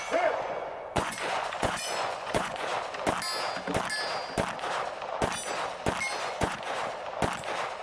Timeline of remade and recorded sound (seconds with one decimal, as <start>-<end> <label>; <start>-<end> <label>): 0.0-2.7 remade; 2.7-6.2 recorded; 6.2-6.8 remade; 6.8-7.8 recorded